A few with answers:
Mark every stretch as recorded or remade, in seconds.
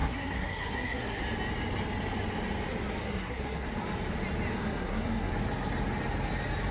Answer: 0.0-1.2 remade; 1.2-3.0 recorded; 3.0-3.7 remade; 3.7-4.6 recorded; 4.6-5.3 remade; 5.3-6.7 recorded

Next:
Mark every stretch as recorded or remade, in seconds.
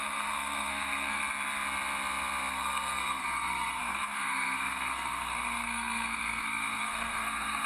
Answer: 0.0-1.2 remade; 1.2-2.5 recorded; 2.5-7.7 remade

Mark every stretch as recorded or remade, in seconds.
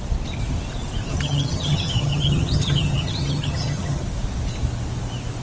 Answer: 0.0-1.1 recorded; 1.1-4.0 remade; 4.0-5.4 recorded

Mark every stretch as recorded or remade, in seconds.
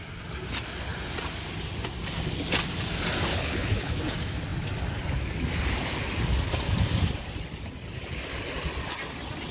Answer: 0.0-3.3 recorded; 3.3-4.0 remade; 4.0-9.5 recorded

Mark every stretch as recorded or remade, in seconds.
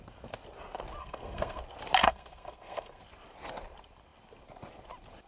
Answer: 0.0-1.0 recorded; 1.0-1.6 remade; 1.6-2.0 recorded; 2.0-3.0 remade; 3.0-5.3 recorded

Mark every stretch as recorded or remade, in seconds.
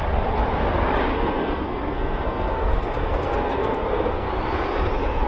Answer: 0.0-1.1 recorded; 1.1-4.3 remade; 4.3-5.3 recorded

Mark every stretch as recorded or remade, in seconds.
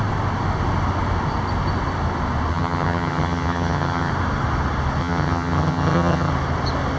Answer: 0.0-2.5 recorded; 2.5-4.1 remade; 4.1-5.0 recorded; 5.0-6.3 remade; 6.3-7.0 recorded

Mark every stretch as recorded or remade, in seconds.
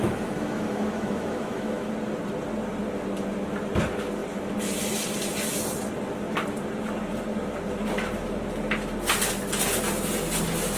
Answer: 0.0-1.9 remade; 1.9-10.8 recorded